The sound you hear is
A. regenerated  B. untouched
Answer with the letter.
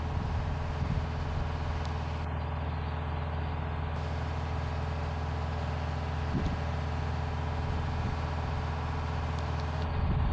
B